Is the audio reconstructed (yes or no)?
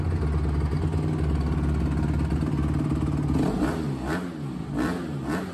no